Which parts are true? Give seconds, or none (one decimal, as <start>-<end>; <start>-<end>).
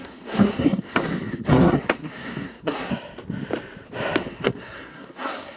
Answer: 2.9-4.2